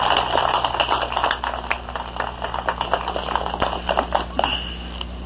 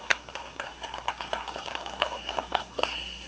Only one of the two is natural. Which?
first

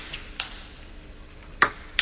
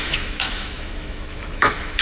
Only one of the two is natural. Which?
first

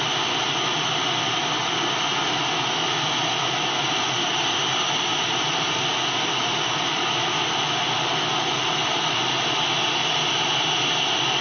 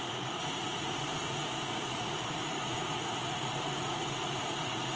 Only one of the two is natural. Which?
first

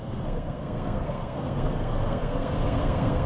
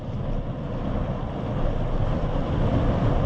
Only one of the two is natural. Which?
second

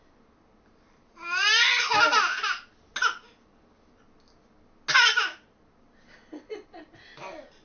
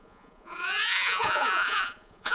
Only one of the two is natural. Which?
first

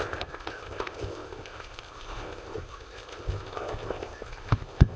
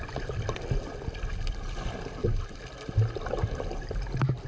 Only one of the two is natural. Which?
second